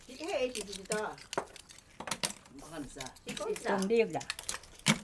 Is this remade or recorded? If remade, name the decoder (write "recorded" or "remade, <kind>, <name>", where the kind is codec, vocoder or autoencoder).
recorded